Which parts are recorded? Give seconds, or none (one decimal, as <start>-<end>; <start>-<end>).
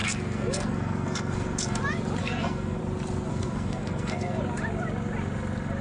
1.8-2.2; 2.8-3.3; 4.4-5.8